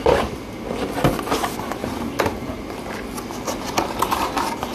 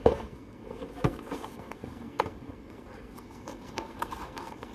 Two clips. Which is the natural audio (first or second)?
first